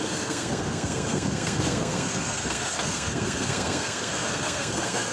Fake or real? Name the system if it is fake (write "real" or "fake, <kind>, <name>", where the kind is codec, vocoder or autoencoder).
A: fake, codec, SNAC